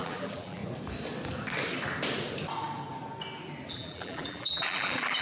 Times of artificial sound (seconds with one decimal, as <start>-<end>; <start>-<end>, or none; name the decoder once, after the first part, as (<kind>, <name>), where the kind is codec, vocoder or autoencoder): 0.0-0.6 (vocoder, BigVGAN v2); 3.7-5.2